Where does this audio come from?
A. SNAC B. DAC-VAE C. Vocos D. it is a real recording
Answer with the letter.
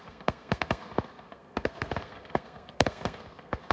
A